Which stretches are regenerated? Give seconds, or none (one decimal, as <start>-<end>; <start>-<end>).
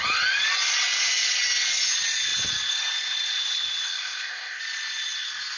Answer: 3.9-4.6